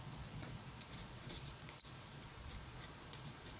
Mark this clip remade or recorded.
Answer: remade